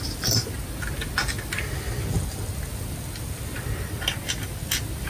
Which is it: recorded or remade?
recorded